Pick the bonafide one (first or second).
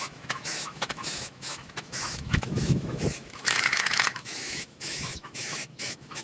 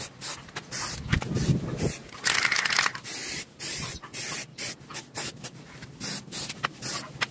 second